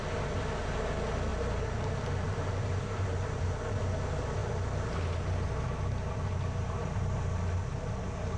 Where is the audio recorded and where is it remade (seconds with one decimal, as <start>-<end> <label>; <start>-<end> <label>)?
0.0-1.3 recorded; 1.3-3.4 remade; 3.4-8.4 recorded